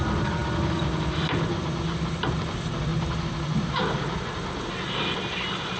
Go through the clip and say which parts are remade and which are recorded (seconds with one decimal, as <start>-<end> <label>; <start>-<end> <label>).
0.0-5.8 recorded

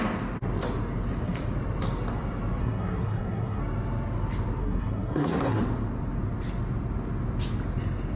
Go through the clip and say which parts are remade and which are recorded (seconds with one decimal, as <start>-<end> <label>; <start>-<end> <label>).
0.0-2.6 recorded; 2.6-3.6 remade; 3.6-4.6 recorded; 4.6-5.6 remade; 5.6-8.2 recorded

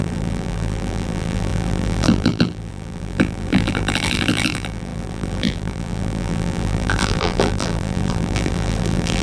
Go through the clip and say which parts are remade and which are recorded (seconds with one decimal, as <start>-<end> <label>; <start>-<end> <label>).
0.0-9.2 remade

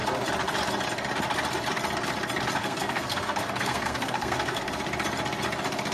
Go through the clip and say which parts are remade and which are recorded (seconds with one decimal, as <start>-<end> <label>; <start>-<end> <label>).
0.0-2.6 recorded; 2.6-4.7 remade; 4.7-5.9 recorded

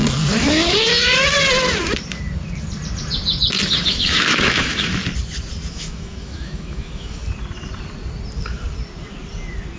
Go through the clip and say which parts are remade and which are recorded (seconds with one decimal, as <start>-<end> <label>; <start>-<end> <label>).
0.0-3.9 recorded; 3.9-4.9 remade; 4.9-5.7 recorded; 5.7-7.2 remade; 7.2-9.8 recorded

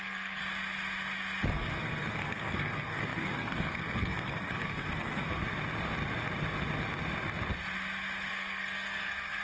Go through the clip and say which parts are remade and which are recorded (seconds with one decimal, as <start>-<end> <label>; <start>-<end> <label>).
0.0-0.4 remade; 0.4-1.5 recorded; 1.5-5.4 remade; 5.4-8.3 recorded; 8.3-9.4 remade

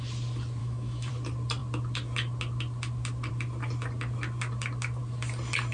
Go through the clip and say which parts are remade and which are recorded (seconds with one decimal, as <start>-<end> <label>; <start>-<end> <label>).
0.0-0.6 recorded; 0.6-1.1 remade; 1.1-5.7 recorded

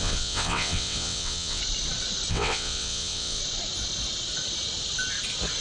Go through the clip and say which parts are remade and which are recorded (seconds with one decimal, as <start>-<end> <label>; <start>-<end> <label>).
0.0-1.6 remade; 1.6-2.3 recorded; 2.3-3.4 remade; 3.4-5.6 recorded